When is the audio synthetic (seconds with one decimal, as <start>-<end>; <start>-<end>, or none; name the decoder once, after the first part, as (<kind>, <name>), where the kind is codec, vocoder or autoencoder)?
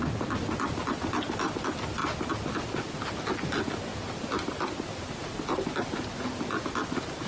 none